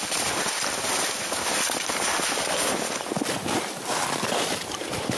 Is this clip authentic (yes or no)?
no